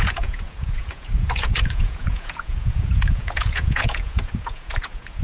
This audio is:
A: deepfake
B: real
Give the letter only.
A